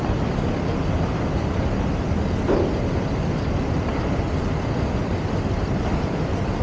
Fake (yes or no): no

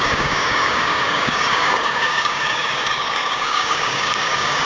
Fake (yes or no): yes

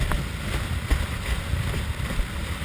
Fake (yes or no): no